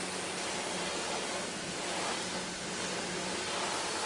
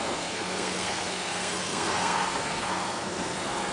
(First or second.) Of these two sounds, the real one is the first